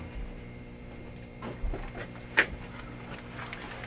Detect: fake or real real